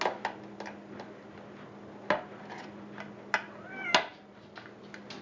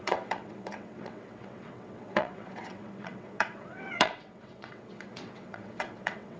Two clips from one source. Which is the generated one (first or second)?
second